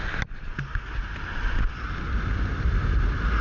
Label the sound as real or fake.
real